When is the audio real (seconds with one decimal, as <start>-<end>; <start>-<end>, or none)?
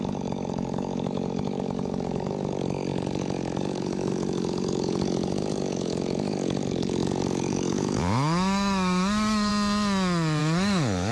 9.5-10.4